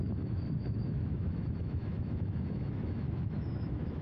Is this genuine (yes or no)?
no